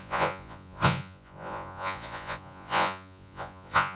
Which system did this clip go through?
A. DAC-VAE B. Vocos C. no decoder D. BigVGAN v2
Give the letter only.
B